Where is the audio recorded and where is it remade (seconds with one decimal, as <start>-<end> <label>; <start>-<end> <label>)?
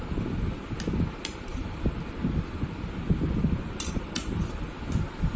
0.0-5.4 recorded